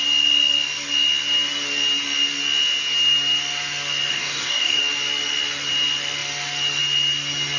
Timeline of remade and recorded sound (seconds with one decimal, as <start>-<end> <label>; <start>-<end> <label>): 0.0-4.1 recorded; 4.1-4.8 remade; 4.8-7.6 recorded